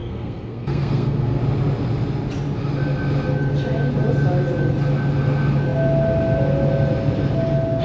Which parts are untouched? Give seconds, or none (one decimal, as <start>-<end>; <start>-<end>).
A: 1.4-7.8